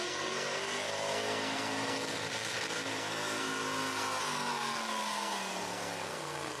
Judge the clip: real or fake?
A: fake